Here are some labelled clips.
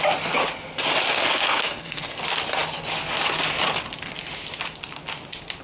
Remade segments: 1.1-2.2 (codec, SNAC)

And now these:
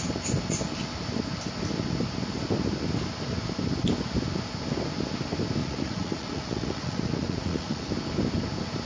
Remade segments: 5.6-7.9 (vocoder, Vocos)

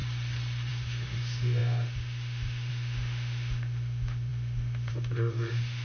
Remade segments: 0.7-5.8 (autoencoder, DAC-VAE)